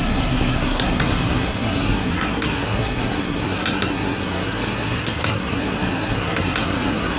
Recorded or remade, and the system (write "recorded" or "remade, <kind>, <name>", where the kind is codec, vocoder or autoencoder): remade, codec, SNAC